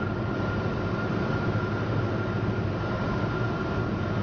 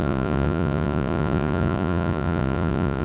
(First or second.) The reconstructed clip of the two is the second